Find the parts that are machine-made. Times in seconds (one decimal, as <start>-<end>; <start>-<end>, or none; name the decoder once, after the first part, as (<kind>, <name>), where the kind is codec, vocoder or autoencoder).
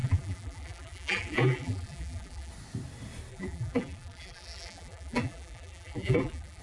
0.0-2.5 (vocoder, BigVGAN v2); 3.3-6.6